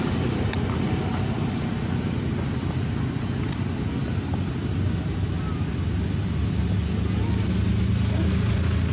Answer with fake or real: real